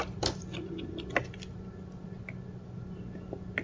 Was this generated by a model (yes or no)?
no